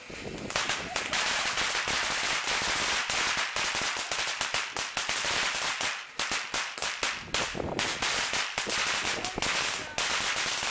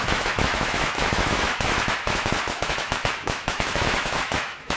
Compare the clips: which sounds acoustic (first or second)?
first